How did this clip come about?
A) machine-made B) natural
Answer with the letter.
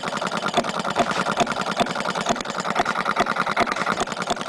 B